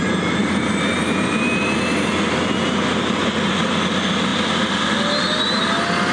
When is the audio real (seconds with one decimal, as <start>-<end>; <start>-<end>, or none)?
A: 0.0-0.4; 3.7-6.1